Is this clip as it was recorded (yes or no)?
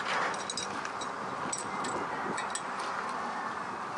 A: yes